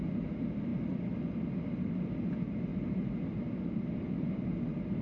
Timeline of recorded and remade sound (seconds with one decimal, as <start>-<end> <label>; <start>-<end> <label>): 0.0-5.0 recorded